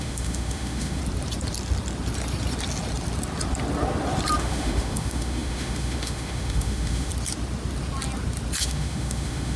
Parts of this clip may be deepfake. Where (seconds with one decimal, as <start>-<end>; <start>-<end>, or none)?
0.0-1.0; 4.4-7.1; 8.6-9.6